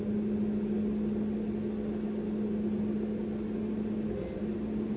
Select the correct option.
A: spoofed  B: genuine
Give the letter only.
B